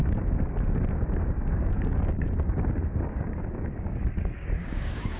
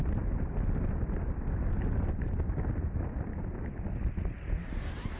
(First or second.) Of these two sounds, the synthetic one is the first